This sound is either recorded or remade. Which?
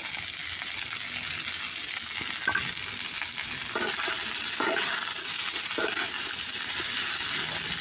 recorded